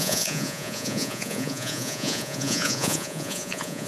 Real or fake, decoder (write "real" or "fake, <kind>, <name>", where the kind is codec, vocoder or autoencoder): fake, vocoder, Vocos